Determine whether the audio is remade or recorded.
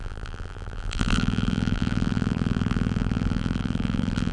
remade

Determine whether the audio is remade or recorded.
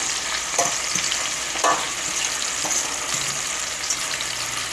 recorded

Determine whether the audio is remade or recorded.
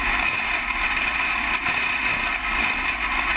recorded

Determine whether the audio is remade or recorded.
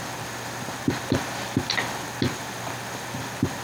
recorded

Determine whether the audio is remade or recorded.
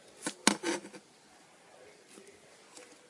recorded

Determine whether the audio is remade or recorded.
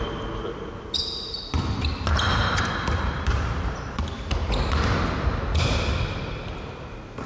recorded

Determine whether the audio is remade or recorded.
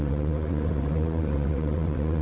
remade